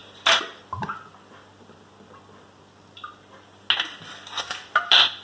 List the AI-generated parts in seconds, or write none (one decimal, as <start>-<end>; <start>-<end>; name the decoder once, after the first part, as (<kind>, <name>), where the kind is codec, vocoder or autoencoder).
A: none